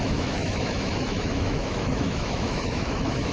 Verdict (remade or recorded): remade